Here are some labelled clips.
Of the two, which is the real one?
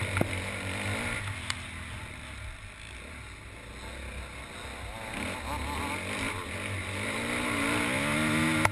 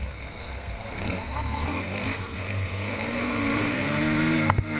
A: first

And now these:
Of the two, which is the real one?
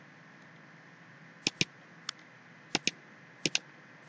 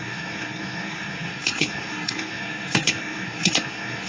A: first